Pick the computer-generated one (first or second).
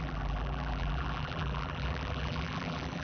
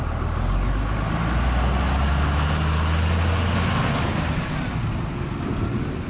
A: first